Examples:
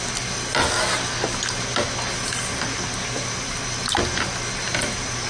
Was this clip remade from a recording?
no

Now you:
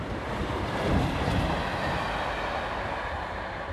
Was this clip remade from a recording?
no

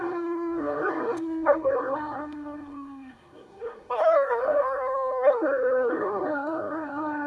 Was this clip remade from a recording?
yes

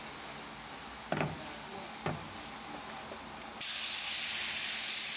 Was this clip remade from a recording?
no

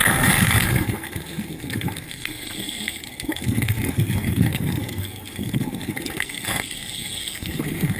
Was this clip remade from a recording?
yes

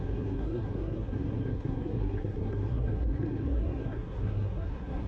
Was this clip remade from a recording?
yes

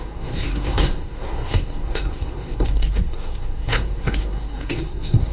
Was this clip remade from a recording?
yes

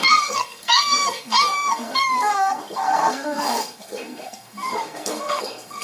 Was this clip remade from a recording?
yes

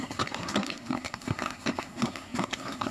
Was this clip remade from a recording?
yes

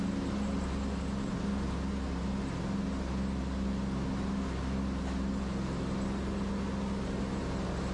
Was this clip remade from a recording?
no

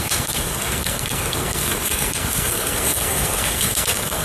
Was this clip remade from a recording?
yes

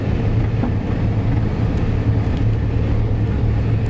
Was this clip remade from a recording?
no